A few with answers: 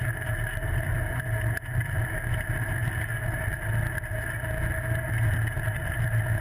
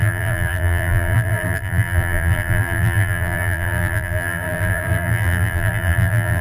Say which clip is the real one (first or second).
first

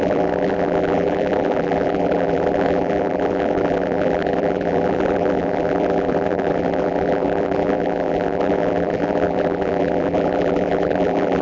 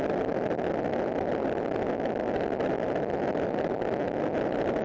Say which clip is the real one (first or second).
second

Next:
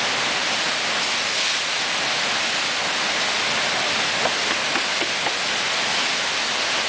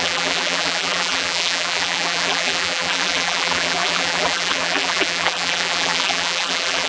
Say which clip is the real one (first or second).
first